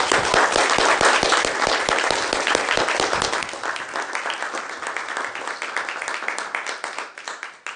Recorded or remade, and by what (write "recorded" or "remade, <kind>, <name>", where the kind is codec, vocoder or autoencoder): recorded